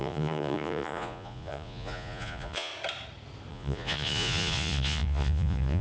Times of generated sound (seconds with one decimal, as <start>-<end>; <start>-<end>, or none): 0.0-2.7; 3.5-5.8